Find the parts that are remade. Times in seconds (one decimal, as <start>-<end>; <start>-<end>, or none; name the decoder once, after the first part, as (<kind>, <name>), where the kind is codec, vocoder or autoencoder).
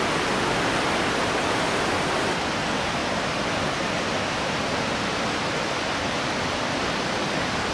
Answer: none